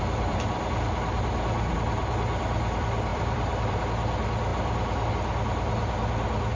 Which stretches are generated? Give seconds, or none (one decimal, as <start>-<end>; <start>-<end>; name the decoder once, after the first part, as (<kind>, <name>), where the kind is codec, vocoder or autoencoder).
3.1-3.8 (vocoder, BigVGAN v2)